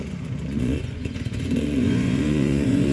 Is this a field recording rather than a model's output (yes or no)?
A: no